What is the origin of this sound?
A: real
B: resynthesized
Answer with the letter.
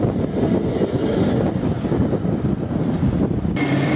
A